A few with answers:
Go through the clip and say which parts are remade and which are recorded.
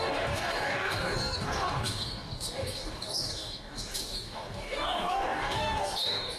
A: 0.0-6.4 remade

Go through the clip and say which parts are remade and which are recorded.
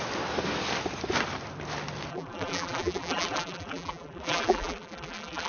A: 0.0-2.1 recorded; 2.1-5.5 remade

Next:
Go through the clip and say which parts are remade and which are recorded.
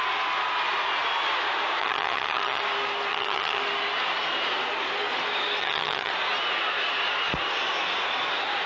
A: 0.0-1.8 recorded; 1.8-2.6 remade; 2.6-3.1 recorded; 3.1-3.6 remade; 3.6-5.6 recorded; 5.6-6.1 remade; 6.1-8.7 recorded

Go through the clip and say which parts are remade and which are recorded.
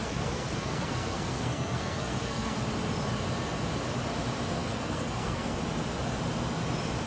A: 0.0-2.6 remade; 2.6-4.6 recorded; 4.6-5.6 remade; 5.6-7.1 recorded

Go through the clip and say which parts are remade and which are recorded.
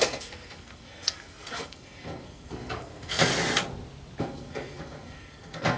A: 0.0-3.3 remade; 3.3-4.2 recorded; 4.2-5.8 remade